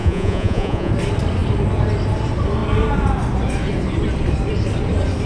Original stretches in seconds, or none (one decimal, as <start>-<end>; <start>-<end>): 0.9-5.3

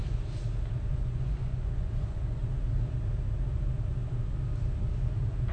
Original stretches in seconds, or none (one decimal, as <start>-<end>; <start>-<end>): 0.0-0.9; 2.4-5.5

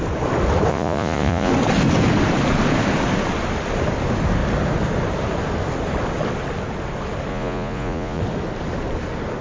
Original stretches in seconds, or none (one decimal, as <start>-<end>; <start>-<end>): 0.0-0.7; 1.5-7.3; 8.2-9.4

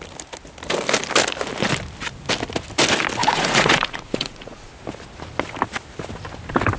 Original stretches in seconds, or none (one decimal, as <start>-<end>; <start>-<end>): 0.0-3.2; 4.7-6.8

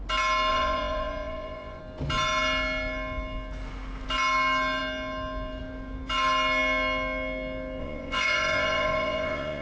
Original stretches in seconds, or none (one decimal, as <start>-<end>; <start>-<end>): 0.0-0.5; 1.8-7.8